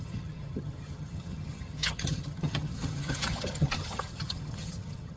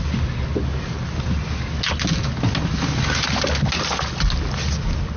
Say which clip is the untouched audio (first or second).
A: second